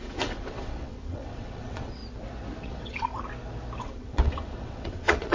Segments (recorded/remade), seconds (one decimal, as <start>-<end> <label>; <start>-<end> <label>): 0.0-2.0 remade; 2.0-2.6 recorded; 2.6-3.1 remade; 3.1-3.8 recorded; 3.8-5.3 remade